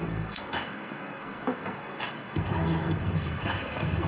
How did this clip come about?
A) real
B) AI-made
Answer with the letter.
B